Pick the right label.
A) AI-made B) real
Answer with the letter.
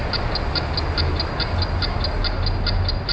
B